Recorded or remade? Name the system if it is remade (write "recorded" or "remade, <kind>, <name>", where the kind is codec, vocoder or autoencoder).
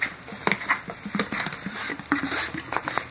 recorded